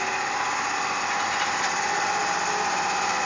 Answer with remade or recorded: recorded